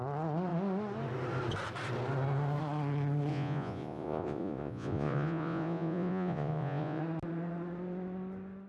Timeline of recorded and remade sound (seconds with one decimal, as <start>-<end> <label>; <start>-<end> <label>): 0.0-3.3 recorded; 3.3-7.0 remade; 7.0-8.7 recorded